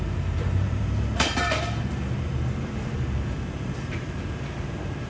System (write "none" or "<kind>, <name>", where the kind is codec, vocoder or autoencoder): vocoder, BigVGAN v2